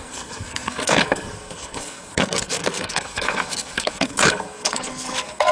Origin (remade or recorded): remade